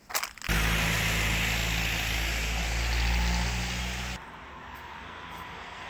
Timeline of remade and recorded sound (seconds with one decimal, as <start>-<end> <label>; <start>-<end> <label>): 0.0-4.5 recorded; 4.5-5.9 remade